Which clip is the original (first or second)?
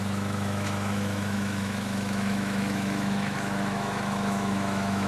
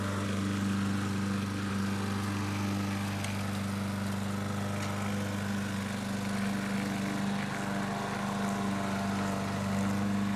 second